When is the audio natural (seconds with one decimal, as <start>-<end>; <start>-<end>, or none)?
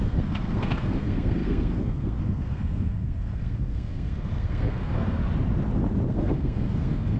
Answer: 5.2-6.1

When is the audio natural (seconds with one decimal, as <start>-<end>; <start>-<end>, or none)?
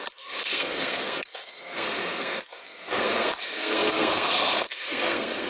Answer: none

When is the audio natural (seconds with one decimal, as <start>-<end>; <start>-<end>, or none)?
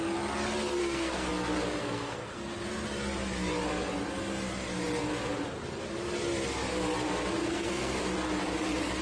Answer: 0.0-0.8; 1.3-1.8; 2.5-7.4; 8.0-9.0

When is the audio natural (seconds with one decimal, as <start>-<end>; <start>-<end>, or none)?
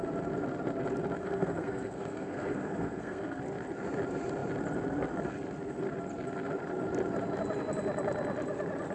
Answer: 0.0-1.2; 3.4-8.9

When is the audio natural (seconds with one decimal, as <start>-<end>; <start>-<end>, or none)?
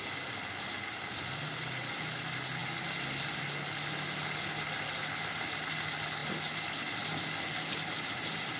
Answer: 0.0-8.6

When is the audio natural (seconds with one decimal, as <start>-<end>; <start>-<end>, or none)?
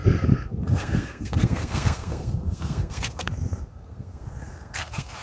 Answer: none